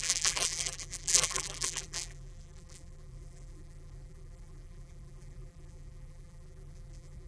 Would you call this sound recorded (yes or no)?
no